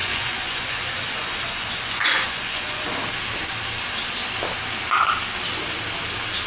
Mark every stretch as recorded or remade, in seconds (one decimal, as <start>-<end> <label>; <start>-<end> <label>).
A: 0.0-2.9 remade; 2.9-6.5 recorded